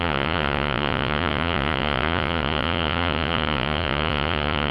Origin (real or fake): fake